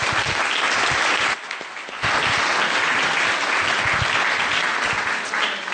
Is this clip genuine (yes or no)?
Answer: yes